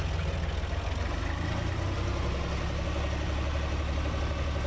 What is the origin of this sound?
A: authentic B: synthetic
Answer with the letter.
A